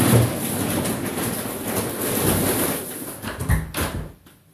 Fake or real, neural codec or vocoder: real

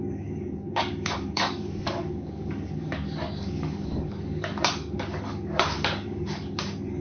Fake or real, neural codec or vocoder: fake, codec, DAC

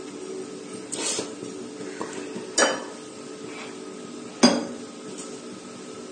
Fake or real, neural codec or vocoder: real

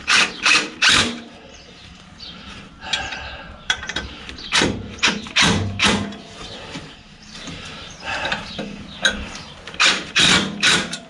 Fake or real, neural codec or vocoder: fake, vocoder, BigVGAN v2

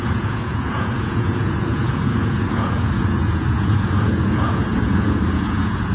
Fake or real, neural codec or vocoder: fake, vocoder, Vocos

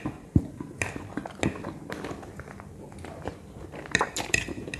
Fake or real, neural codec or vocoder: real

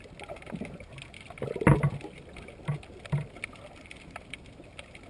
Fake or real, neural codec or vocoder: real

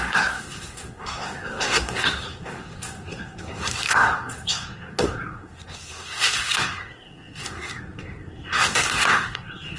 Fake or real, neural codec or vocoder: fake, codec, SNAC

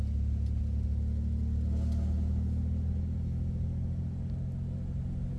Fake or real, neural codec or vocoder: real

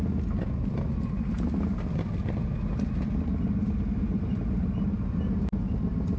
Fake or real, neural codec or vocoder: real